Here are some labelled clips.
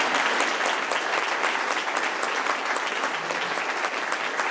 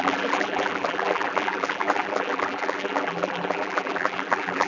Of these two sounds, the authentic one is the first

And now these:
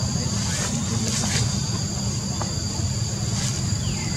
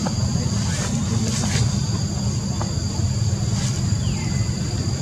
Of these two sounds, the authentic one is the second